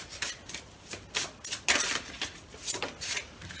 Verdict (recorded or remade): recorded